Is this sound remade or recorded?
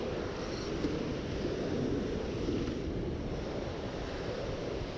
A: recorded